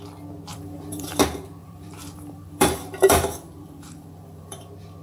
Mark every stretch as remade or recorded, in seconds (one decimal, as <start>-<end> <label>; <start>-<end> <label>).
0.0-0.5 recorded; 0.5-1.2 remade; 1.2-1.6 recorded; 1.6-4.6 remade; 4.6-5.0 recorded